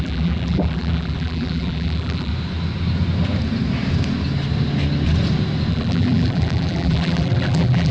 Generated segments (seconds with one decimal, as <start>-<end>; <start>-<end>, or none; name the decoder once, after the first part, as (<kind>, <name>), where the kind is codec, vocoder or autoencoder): 0.0-2.3 (vocoder, BigVGAN v2); 5.7-7.9

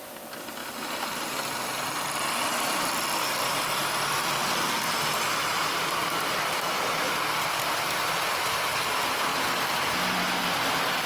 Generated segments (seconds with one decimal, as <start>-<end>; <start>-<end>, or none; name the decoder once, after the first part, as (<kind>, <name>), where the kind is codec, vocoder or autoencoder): 0.6-2.9 (vocoder, BigVGAN v2); 5.4-8.4

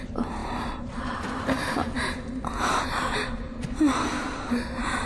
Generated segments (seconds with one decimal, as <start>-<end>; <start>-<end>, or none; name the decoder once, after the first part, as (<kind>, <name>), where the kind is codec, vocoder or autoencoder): 0.0-5.1 (vocoder, BigVGAN v2)

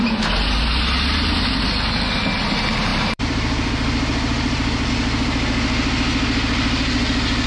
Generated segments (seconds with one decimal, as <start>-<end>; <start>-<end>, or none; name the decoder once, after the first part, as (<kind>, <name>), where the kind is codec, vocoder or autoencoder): 2.9-4.9 (vocoder, BigVGAN v2)

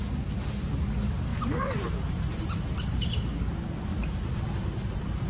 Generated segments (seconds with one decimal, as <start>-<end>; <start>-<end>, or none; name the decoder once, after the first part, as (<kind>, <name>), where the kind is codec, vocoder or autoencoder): 1.3-3.1 (vocoder, BigVGAN v2); 3.9-5.3

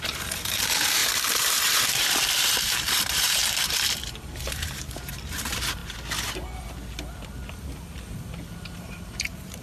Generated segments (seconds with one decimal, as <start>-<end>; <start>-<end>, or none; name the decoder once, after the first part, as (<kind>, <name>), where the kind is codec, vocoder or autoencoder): 0.0-3.4 (vocoder, BigVGAN v2); 4.2-5.8; 8.6-9.6

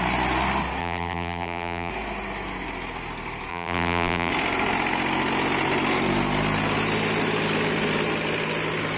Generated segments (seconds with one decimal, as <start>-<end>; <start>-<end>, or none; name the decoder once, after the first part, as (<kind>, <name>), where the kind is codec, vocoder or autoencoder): 0.8-1.9 (vocoder, BigVGAN v2); 3.5-4.3